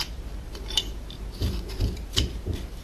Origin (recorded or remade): remade